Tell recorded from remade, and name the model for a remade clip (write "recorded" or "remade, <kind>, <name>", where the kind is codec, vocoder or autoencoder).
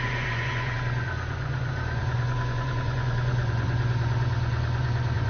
remade, vocoder, Vocos